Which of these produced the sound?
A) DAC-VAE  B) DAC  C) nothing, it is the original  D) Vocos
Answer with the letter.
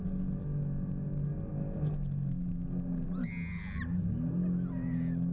C